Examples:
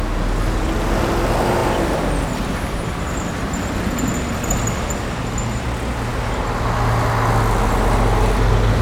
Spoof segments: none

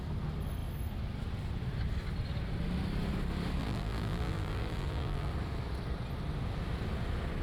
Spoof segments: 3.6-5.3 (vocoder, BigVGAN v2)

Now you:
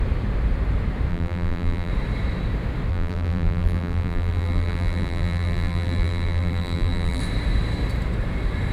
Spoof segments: 1.1-1.9 (vocoder, BigVGAN v2); 2.9-7.2

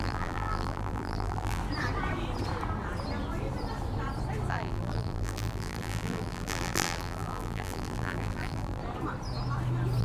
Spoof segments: 0.0-1.6 (vocoder, BigVGAN v2); 4.5-8.8

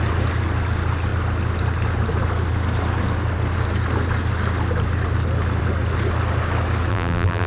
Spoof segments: 6.9-7.5 (vocoder, BigVGAN v2)

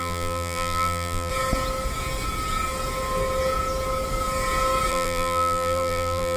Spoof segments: 0.0-1.3 (vocoder, BigVGAN v2); 4.9-6.4

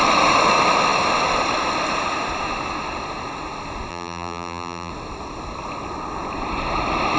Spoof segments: 3.9-4.9 (vocoder, BigVGAN v2)

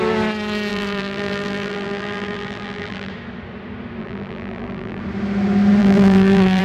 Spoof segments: 0.7-3.1 (vocoder, BigVGAN v2); 4.0-5.0; 5.8-6.6